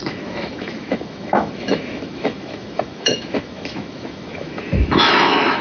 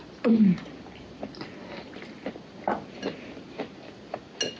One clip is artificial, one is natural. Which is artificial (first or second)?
first